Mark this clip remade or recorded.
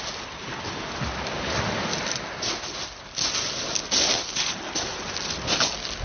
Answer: recorded